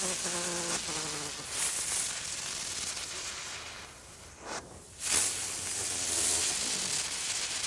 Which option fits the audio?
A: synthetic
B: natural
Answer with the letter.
B